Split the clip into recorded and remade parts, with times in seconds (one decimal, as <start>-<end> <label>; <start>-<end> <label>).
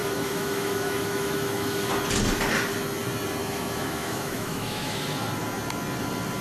0.0-1.9 remade; 1.9-3.4 recorded; 3.4-5.0 remade; 5.0-6.4 recorded